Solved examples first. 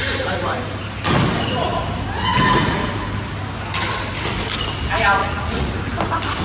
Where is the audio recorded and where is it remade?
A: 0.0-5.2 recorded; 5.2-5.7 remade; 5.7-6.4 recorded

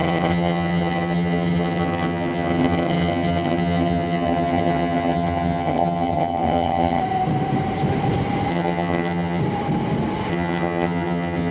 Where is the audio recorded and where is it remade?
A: 0.0-7.0 remade; 7.0-8.5 recorded; 8.5-9.4 remade; 9.4-10.3 recorded; 10.3-11.5 remade

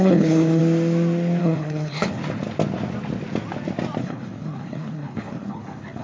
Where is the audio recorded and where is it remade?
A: 0.0-0.6 remade; 0.6-1.4 recorded; 1.4-2.2 remade; 2.2-4.0 recorded; 4.0-6.0 remade

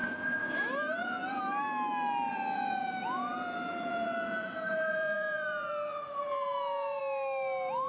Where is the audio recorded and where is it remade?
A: 0.0-1.4 remade; 1.4-2.3 recorded; 2.3-7.0 remade; 7.0-7.9 recorded

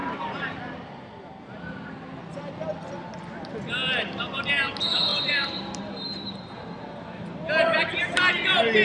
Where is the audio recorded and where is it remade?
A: 0.0-0.6 remade; 0.6-5.1 recorded; 5.1-8.3 remade; 8.3-8.8 recorded

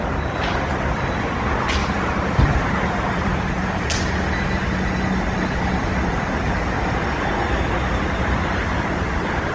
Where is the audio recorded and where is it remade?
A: 0.0-1.8 recorded; 1.8-3.3 remade; 3.3-9.5 recorded

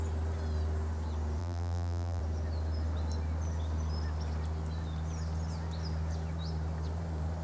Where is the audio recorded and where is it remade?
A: 0.0-1.4 recorded; 1.4-2.2 remade; 2.2-7.4 recorded

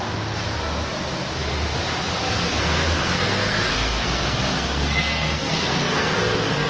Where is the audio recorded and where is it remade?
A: 0.0-2.5 recorded; 2.5-6.7 remade